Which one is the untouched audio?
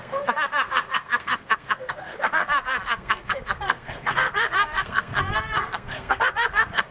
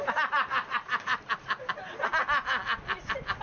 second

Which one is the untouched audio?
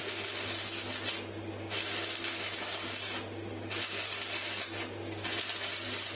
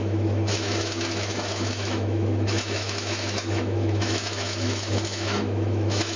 first